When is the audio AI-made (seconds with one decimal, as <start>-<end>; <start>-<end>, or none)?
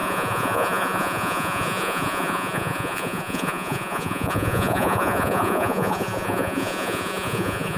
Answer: 0.0-7.8